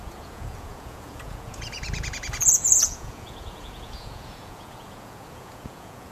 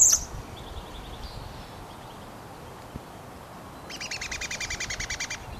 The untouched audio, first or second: second